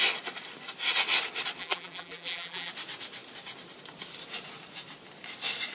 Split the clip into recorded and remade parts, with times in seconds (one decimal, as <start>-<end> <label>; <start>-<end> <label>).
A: 0.0-1.6 recorded; 1.6-2.7 remade; 2.7-5.7 recorded